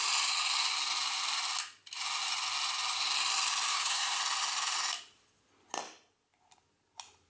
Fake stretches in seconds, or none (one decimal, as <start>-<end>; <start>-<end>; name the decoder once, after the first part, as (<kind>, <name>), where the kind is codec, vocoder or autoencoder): 3.7-4.2 (codec, SNAC)